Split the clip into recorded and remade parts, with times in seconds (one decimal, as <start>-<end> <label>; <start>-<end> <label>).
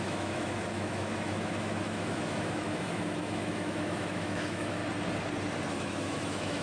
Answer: 0.0-4.8 remade; 4.8-5.7 recorded; 5.7-6.6 remade